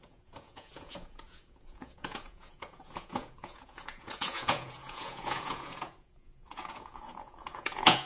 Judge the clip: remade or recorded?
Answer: remade